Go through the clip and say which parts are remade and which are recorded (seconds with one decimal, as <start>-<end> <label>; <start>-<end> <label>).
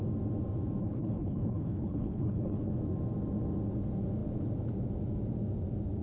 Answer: 0.0-0.8 recorded; 0.8-2.7 remade; 2.7-6.0 recorded